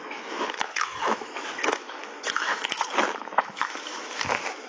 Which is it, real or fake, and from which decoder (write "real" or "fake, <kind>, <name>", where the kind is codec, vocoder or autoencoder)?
fake, autoencoder, DAC-VAE